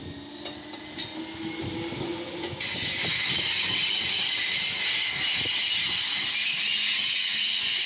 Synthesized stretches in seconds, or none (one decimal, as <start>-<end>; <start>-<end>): 2.1-3.3; 6.7-7.9